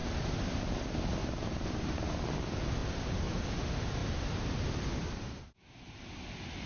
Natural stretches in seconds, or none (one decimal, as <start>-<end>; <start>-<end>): 0.6-1.2; 2.1-2.8; 3.4-6.7